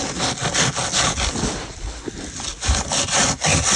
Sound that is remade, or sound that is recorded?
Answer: recorded